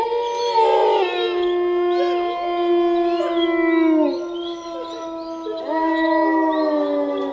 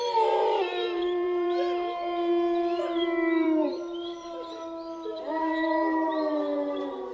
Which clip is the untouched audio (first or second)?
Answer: first